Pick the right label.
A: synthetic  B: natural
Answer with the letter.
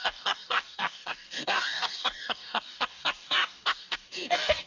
A